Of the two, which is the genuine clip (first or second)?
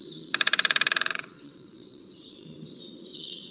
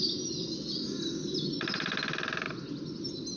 second